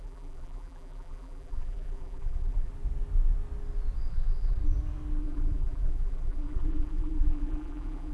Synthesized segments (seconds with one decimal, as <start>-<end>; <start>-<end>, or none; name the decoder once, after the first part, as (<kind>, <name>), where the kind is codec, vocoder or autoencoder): 0.0-2.7 (vocoder, BigVGAN v2); 4.1-4.6; 5.2-8.1